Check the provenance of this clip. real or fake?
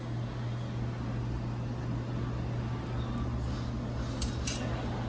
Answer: real